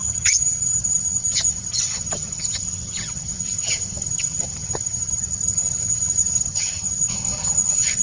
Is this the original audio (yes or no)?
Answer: no